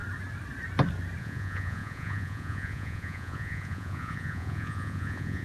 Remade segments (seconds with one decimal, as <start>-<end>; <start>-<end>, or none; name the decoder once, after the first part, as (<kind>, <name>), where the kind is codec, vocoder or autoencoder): 1.2-5.4 (vocoder, Vocos)